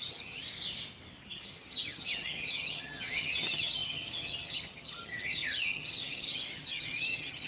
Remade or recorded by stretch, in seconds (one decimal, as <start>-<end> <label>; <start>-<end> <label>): 0.0-0.4 remade; 0.4-1.2 recorded; 1.2-7.5 remade